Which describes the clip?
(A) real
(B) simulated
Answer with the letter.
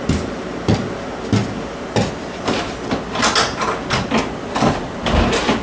A